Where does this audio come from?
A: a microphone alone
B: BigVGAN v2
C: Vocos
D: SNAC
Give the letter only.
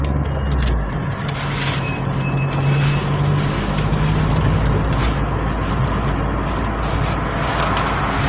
A